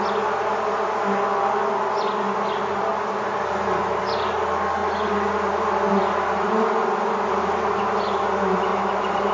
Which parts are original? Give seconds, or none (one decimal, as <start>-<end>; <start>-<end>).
0.0-9.3